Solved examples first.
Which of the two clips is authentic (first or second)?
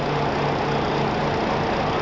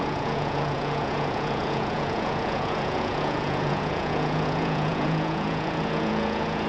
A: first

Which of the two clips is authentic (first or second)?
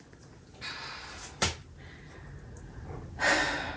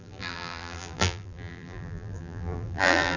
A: first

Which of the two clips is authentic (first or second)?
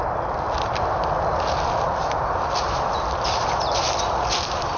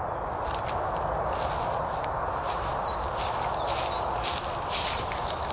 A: second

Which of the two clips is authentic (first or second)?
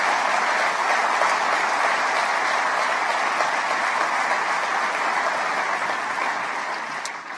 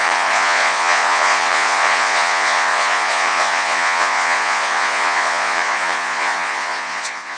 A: first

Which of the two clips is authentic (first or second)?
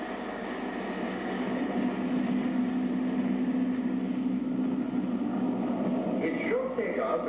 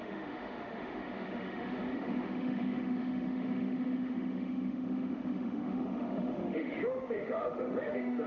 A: first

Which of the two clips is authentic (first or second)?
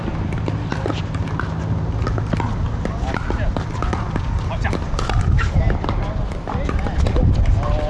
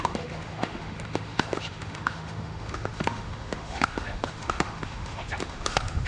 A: first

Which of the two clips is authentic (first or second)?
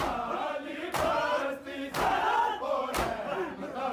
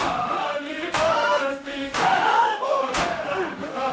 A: first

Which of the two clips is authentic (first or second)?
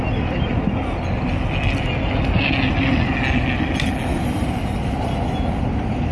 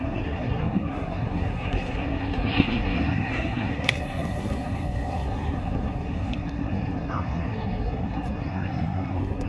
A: first